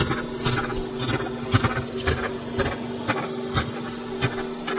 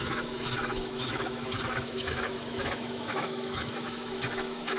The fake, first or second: second